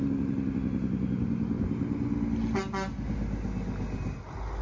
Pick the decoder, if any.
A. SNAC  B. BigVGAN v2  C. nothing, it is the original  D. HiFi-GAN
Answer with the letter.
C